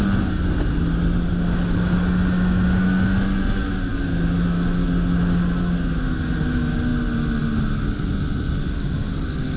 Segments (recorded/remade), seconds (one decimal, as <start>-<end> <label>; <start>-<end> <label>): 0.0-9.6 recorded